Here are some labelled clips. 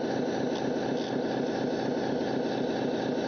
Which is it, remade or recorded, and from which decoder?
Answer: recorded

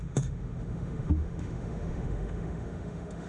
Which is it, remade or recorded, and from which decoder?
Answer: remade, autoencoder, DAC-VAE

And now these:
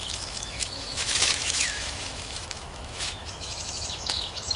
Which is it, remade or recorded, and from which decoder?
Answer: remade, autoencoder, DAC-VAE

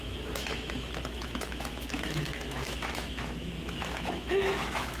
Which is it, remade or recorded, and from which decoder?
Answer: remade, autoencoder, DAC-VAE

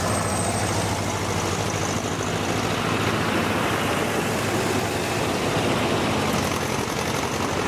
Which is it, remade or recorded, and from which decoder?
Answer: recorded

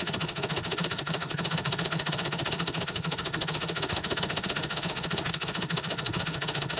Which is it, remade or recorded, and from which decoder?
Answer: remade, autoencoder, DAC-VAE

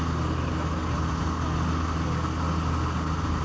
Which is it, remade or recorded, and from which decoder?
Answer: recorded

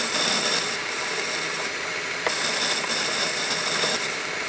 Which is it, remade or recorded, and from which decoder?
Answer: recorded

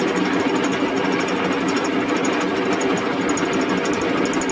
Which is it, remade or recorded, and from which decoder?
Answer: recorded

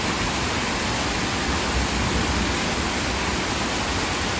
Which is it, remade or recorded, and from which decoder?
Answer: recorded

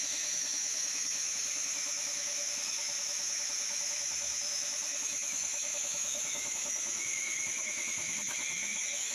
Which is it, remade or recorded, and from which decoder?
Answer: remade, autoencoder, DAC-VAE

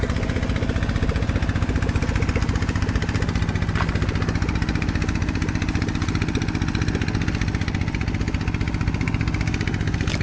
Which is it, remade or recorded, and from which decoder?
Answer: recorded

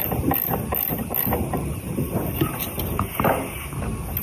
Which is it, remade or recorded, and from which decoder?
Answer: recorded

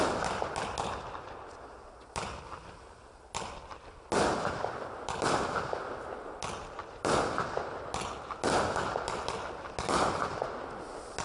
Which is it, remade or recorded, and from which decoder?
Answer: recorded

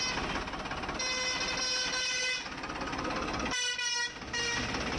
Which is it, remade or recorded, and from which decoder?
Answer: recorded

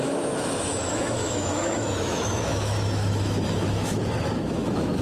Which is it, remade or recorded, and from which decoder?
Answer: remade, autoencoder, DAC-VAE